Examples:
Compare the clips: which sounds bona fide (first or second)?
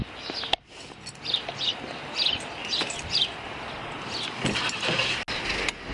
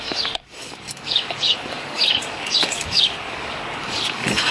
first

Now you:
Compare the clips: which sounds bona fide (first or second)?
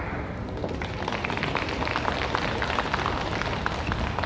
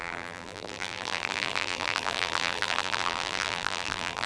first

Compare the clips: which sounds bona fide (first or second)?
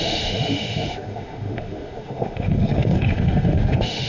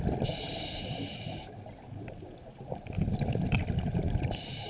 second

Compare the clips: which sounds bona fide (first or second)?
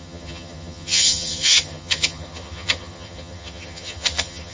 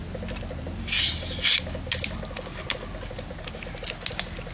second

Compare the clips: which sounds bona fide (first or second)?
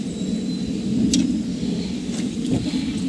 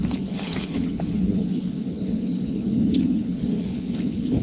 first